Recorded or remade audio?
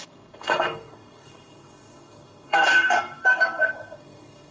remade